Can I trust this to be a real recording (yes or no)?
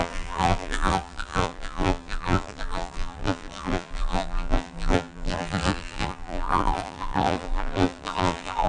no